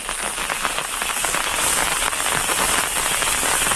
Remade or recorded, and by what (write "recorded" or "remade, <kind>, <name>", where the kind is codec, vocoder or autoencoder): recorded